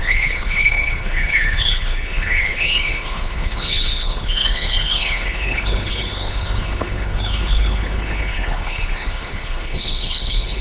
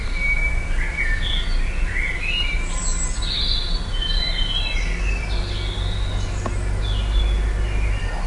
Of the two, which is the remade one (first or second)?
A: first